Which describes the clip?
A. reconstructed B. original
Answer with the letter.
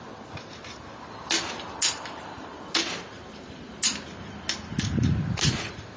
B